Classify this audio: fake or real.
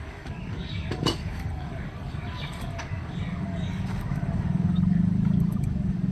fake